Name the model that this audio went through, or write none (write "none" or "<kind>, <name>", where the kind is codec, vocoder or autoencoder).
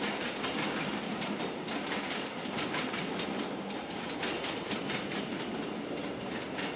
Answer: none